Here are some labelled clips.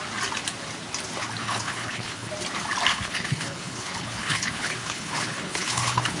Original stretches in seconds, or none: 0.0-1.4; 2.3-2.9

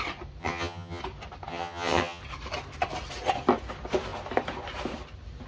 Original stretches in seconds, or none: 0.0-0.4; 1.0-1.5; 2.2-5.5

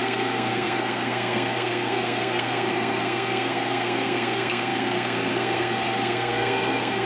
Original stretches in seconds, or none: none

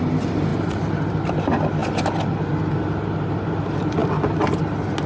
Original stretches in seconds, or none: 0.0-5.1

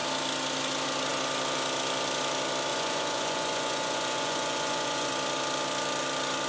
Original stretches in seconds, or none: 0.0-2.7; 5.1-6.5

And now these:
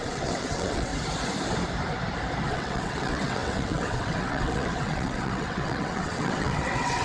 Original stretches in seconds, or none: 0.9-2.5

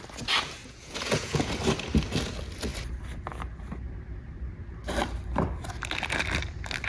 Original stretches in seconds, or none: 0.0-0.6; 1.5-6.9

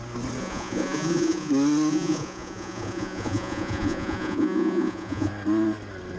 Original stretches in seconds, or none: 0.0-0.4; 1.5-1.9; 5.3-6.2